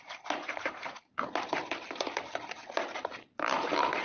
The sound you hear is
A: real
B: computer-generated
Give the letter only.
B